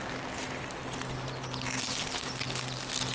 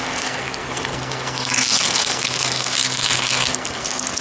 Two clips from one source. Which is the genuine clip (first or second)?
first